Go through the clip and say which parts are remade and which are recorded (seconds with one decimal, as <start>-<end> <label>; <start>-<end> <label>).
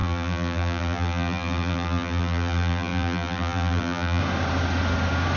0.0-4.2 remade; 4.2-5.4 recorded